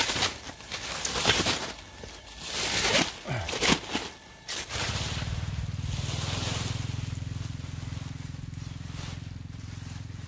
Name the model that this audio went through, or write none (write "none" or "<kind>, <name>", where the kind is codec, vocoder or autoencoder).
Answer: none